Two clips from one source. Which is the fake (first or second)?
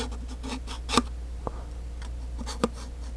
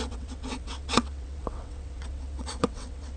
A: second